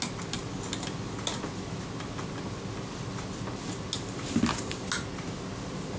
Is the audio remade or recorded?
recorded